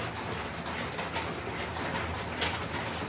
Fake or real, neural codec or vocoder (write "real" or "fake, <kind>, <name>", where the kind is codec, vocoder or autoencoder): real